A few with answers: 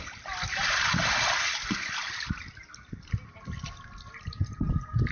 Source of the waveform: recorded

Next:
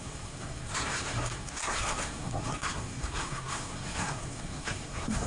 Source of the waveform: remade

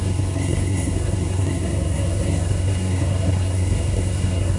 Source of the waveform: remade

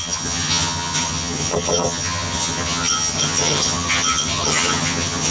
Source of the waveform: remade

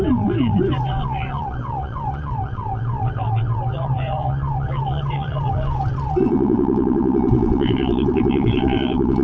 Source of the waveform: remade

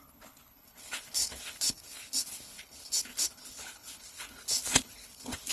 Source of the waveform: remade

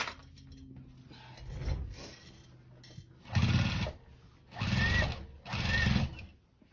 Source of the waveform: recorded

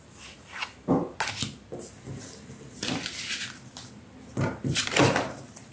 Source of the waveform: recorded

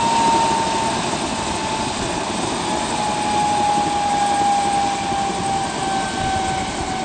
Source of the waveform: recorded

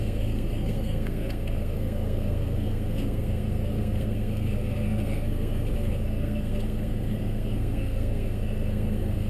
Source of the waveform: remade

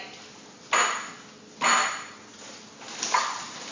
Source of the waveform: recorded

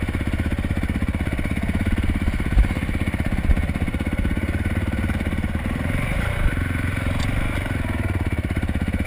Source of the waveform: remade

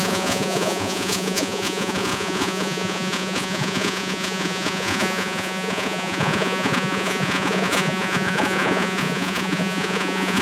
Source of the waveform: remade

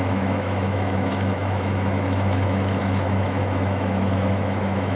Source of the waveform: remade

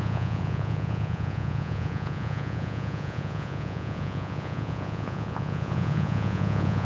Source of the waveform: remade